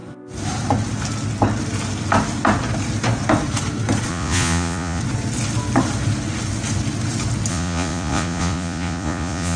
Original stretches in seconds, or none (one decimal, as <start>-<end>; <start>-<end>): 0.0-4.1; 5.0-7.5